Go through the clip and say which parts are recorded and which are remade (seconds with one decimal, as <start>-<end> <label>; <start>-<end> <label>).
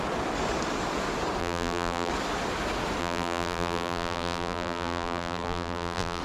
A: 0.0-1.4 recorded; 1.4-2.1 remade; 2.1-3.0 recorded; 3.0-6.2 remade